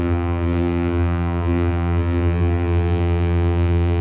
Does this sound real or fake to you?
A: fake